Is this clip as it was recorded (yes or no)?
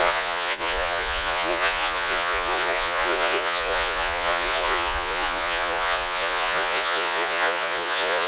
no